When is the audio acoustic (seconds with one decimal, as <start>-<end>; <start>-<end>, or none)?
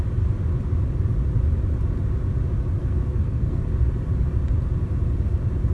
0.0-2.8; 3.6-5.7